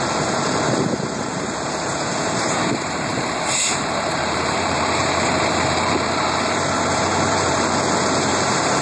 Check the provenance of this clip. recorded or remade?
remade